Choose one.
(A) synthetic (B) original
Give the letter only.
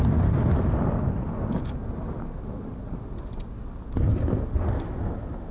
B